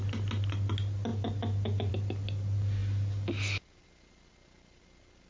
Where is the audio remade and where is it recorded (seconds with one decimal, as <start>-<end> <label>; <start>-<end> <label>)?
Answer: 0.0-5.3 recorded